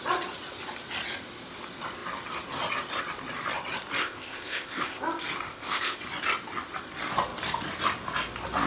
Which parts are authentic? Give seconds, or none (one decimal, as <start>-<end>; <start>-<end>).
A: 0.0-4.0; 5.0-5.5; 6.0-8.7